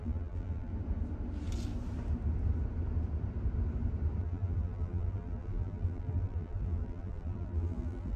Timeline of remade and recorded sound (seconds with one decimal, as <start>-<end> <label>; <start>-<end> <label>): 0.0-0.7 remade; 0.7-4.2 recorded; 4.2-8.2 remade